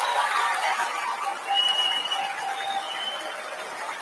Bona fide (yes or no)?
yes